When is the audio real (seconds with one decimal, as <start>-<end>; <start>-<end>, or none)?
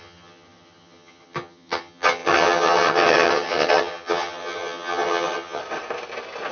5.6-6.5